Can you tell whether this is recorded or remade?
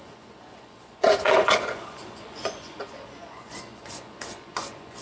remade